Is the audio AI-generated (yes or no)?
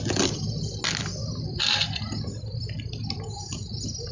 no